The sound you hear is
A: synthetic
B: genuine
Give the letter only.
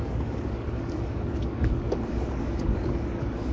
A